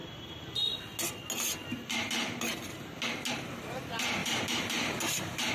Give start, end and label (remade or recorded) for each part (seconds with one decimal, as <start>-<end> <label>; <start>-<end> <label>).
0.0-4.2 recorded; 4.2-5.5 remade

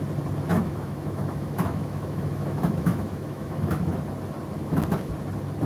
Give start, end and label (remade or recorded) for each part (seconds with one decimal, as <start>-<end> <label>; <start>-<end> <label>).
0.0-0.5 recorded; 0.5-3.9 remade; 3.9-4.6 recorded; 4.6-5.1 remade; 5.1-5.7 recorded

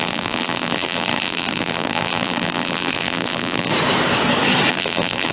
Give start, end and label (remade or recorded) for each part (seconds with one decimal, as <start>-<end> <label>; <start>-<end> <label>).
0.0-3.7 remade; 3.7-4.7 recorded; 4.7-5.3 remade

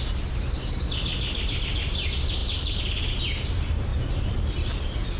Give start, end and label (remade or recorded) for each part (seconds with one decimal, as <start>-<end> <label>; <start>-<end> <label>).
0.0-1.1 recorded; 1.1-1.6 remade; 1.6-3.9 recorded; 3.9-4.8 remade; 4.8-5.2 recorded

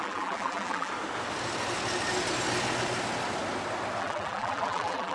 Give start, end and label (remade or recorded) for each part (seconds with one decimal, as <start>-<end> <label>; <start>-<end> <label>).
0.0-0.9 remade; 0.9-4.0 recorded; 4.0-5.1 remade

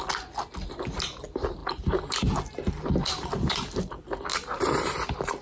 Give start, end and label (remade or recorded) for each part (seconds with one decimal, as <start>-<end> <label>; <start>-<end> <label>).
0.0-1.6 recorded; 1.6-2.7 remade; 2.7-4.3 recorded; 4.3-5.4 remade

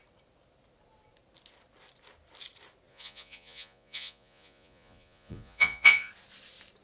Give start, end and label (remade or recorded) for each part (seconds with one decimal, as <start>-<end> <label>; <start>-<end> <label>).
0.0-2.9 recorded; 2.9-6.1 remade; 6.1-6.8 recorded

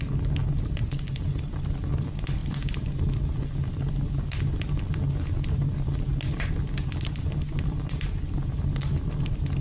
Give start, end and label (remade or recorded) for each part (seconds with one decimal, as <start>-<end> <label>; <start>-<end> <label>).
0.0-9.6 recorded